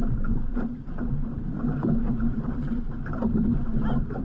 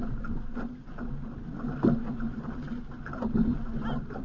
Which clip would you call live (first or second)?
second